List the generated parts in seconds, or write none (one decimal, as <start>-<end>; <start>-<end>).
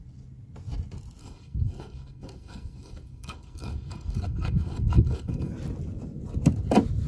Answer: 1.2-5.5